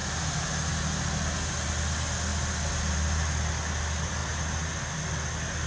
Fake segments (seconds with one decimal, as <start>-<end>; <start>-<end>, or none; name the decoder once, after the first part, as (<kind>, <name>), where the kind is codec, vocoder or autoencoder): none